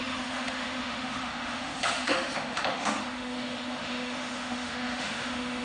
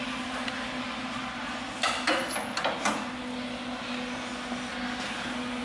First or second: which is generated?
first